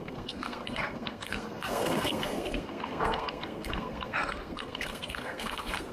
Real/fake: fake